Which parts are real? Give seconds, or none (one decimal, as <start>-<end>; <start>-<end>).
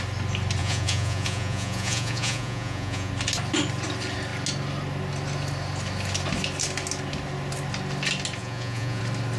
0.0-0.6; 3.1-8.4; 9.0-9.4